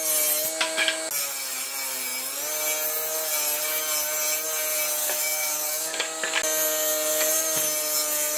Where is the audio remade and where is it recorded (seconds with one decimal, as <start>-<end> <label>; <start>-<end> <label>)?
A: 0.0-5.0 recorded; 5.0-6.2 remade; 6.2-8.4 recorded